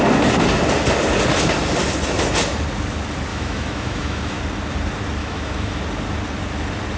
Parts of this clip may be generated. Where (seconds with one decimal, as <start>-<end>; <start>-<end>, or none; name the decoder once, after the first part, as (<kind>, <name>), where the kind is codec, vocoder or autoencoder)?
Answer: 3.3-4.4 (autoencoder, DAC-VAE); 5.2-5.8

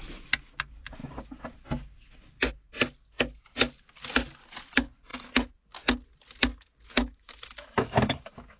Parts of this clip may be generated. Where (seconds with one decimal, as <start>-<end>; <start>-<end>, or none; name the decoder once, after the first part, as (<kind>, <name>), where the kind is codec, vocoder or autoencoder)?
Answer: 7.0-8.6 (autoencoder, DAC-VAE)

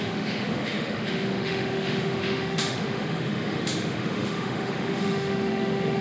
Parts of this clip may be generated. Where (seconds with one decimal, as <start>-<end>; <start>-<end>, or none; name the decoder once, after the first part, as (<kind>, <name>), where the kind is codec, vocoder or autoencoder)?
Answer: 0.0-6.0 (autoencoder, DAC-VAE)

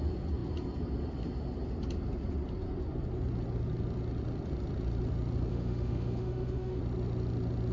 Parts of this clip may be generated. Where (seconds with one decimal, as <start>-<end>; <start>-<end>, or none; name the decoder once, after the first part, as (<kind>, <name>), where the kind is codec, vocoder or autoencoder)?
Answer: 5.5-6.8 (autoencoder, DAC-VAE)

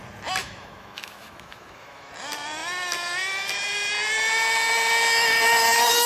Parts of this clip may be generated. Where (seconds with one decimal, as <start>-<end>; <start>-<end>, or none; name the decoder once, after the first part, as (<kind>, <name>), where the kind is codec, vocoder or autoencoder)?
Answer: 0.4-2.1 (autoencoder, DAC-VAE)